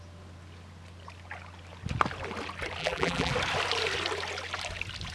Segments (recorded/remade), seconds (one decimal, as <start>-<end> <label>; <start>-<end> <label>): 0.0-2.8 recorded; 2.8-3.3 remade; 3.3-5.1 recorded